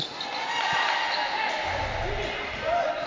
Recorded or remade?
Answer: recorded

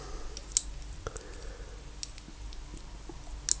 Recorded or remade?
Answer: recorded